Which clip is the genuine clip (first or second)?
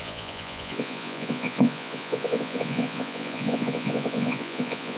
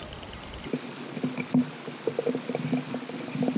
second